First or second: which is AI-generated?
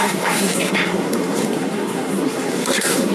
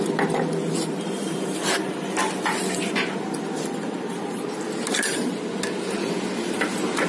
first